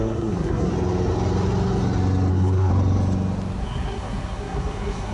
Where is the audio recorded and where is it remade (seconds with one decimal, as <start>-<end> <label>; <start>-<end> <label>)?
0.0-0.7 remade; 0.7-2.3 recorded; 2.3-2.7 remade; 2.7-3.6 recorded; 3.6-5.1 remade